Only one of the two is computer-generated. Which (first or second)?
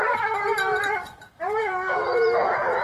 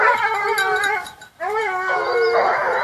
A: first